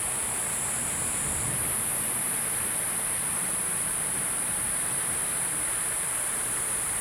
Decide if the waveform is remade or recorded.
remade